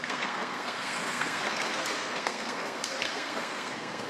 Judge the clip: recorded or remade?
remade